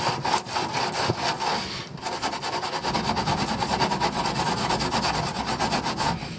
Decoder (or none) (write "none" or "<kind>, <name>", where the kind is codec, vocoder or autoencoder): none